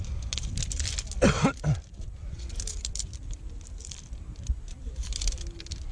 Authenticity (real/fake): fake